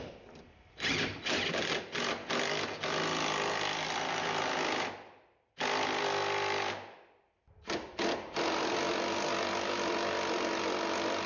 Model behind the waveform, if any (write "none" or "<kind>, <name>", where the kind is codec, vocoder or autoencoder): none